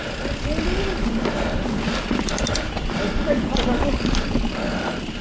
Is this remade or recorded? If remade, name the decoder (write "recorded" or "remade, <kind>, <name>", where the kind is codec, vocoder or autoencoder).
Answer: recorded